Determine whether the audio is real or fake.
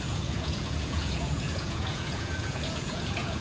fake